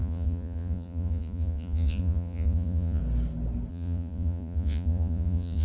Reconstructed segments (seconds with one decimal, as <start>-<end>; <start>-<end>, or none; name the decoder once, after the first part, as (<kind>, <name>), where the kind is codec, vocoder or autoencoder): 0.0-3.0 (vocoder, Vocos); 3.7-5.6